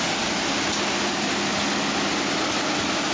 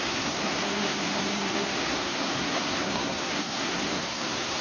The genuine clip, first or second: first